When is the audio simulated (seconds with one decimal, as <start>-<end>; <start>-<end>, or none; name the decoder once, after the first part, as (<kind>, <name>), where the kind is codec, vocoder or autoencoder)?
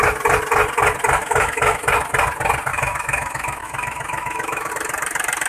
1.2-1.8 (autoencoder, DAC-VAE); 2.7-4.7